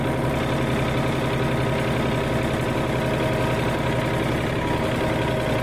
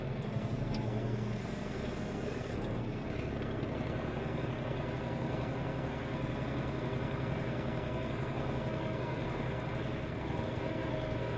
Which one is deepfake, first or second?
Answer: second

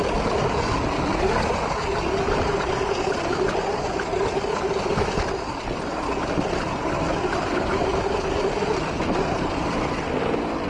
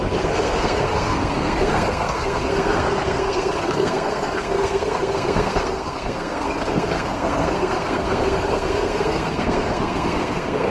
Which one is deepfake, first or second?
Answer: second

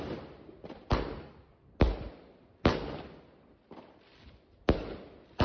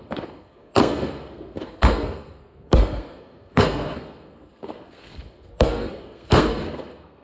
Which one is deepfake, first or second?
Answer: second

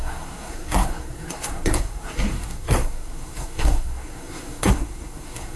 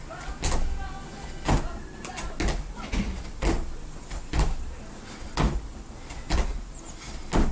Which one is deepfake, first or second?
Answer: first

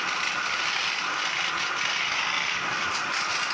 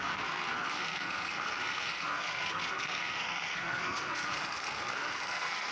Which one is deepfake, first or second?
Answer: second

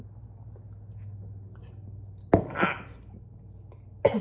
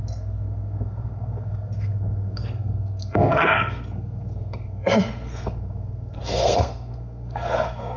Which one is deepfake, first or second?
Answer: second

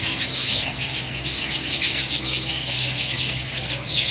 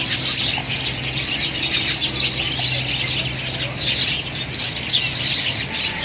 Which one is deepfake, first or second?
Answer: first